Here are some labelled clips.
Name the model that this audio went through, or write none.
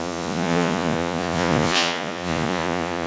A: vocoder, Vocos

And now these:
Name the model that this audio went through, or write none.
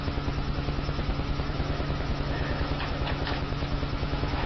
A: autoencoder, DAC-VAE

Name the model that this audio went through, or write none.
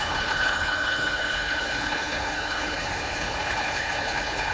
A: codec, HILCodec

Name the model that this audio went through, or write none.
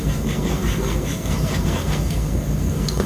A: codec, SNAC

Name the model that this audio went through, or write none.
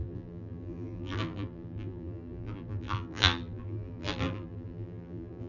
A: vocoder, BigVGAN v2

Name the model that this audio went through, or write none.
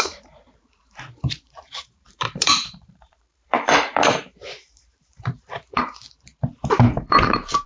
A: vocoder, BigVGAN v2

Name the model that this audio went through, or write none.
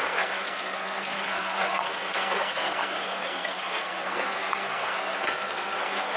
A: codec, SNAC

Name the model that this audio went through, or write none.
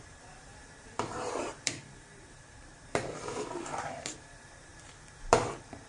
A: vocoder, BigVGAN v2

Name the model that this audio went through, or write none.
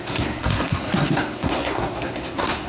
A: codec, SNAC